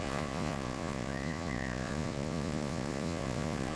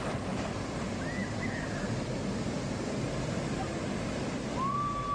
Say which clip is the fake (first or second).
first